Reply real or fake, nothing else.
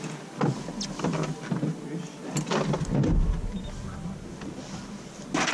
real